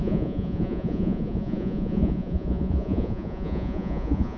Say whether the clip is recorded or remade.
remade